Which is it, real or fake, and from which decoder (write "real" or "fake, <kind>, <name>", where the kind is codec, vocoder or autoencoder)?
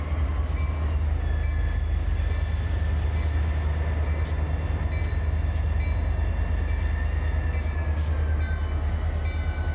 real